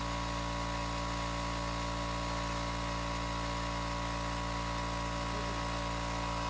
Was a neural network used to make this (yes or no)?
no